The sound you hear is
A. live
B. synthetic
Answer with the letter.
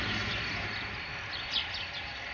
A